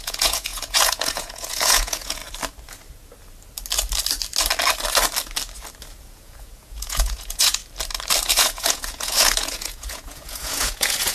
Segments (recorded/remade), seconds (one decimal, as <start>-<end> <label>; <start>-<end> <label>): 0.0-2.2 remade; 2.2-6.0 recorded; 6.0-7.6 remade; 7.6-8.3 recorded; 8.3-11.1 remade